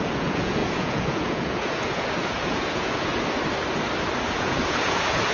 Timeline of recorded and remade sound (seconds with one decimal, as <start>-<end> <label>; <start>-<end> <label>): 0.0-3.1 remade; 3.1-4.2 recorded; 4.2-5.3 remade